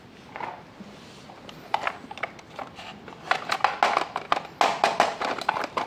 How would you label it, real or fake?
real